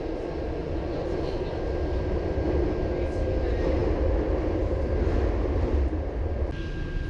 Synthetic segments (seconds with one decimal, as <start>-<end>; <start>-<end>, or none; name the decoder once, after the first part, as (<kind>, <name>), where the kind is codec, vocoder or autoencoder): 0.6-1.4 (vocoder, Vocos)